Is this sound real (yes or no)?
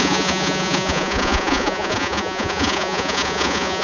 no